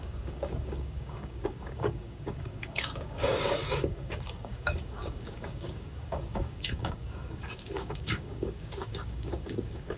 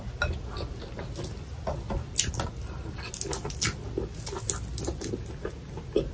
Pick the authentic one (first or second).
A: second